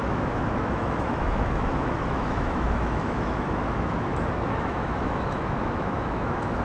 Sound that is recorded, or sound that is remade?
remade